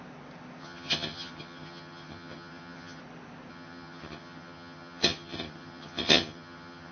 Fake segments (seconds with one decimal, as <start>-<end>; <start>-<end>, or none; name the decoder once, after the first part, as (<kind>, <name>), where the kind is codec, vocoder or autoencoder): 0.6-3.0 (vocoder, HiFi-GAN); 3.5-6.9